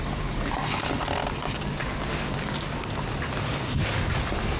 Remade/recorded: recorded